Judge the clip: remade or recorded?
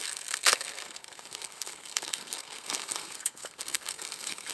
remade